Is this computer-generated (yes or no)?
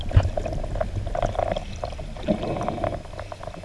no